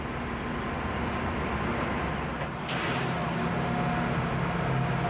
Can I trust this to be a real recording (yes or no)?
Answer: yes